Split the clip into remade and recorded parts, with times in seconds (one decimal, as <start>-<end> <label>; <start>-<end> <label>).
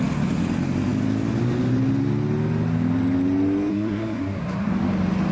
0.0-3.7 recorded; 3.7-4.7 remade; 4.7-5.3 recorded